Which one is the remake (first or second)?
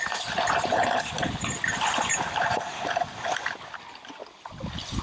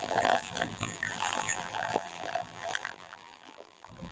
second